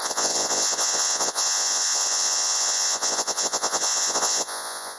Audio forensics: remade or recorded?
remade